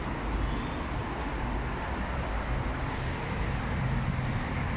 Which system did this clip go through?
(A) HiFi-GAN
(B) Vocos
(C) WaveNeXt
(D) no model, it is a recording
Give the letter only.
D